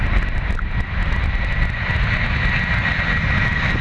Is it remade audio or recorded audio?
recorded